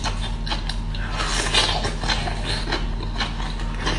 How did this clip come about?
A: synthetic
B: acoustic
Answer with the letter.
B